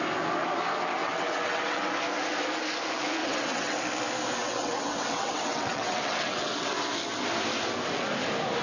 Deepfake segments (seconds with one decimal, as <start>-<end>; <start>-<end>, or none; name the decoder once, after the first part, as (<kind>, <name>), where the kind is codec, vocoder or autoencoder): 1.0-1.9 (vocoder, WaveNeXt); 3.2-3.8; 4.4-6.7